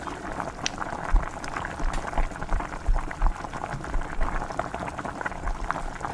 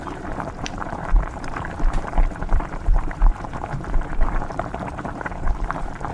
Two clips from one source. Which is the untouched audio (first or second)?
first